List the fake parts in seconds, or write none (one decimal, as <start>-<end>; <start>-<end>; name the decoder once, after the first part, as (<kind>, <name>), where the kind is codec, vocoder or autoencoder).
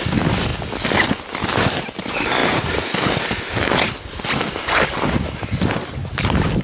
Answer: none